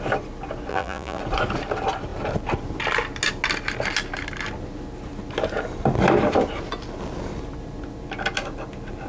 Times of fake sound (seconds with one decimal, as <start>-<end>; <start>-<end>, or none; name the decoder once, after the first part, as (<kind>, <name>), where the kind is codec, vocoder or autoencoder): 0.7-1.2 (vocoder, BigVGAN v2)